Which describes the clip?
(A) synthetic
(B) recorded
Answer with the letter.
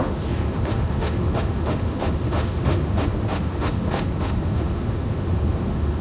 A